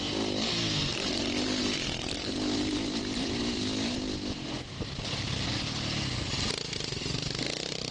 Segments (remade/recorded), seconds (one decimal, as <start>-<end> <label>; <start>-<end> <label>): 0.0-7.9 recorded